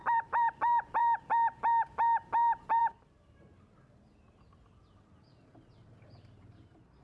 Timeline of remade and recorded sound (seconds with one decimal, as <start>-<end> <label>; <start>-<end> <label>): 0.0-7.0 recorded